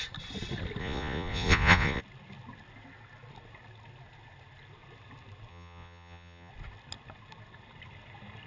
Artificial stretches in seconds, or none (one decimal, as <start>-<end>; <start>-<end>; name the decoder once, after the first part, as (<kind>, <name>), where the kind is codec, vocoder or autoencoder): 0.8-2.0 (vocoder, Vocos); 5.5-6.5

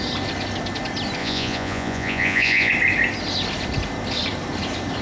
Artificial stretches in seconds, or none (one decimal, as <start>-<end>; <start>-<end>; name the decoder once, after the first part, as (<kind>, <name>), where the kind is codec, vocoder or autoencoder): 1.2-2.7 (vocoder, Vocos)